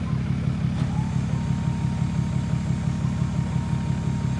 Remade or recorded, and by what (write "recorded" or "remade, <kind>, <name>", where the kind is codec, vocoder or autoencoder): recorded